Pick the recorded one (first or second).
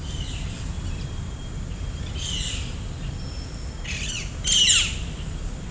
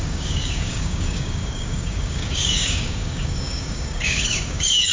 first